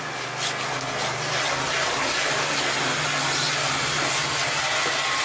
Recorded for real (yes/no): yes